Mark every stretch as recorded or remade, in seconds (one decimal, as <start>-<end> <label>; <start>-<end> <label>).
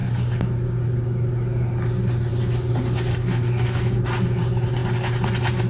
0.0-3.1 recorded; 3.1-4.0 remade; 4.0-5.7 recorded